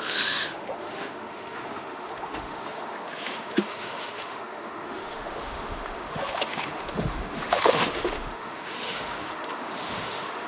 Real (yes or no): no